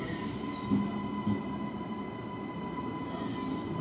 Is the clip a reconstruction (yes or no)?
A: no